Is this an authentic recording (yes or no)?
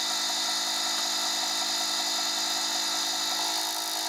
yes